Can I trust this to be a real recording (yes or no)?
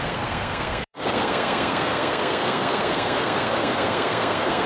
no